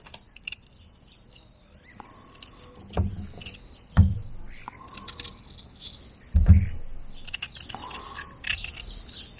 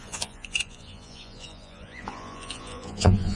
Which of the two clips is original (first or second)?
first